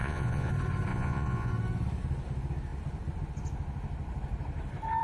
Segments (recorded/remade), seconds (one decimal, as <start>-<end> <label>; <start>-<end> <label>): 0.0-0.5 remade; 0.5-0.9 recorded; 0.9-1.5 remade; 1.5-5.0 recorded